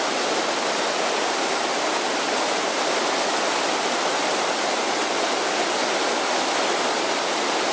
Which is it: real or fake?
real